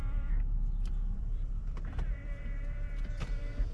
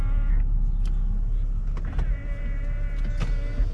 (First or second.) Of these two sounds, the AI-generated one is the first